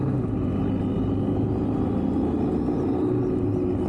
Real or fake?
real